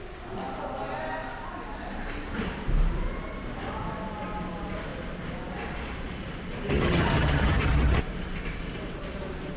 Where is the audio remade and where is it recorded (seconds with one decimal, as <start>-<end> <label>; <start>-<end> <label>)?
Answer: 0.0-6.7 recorded; 6.7-8.0 remade; 8.0-9.6 recorded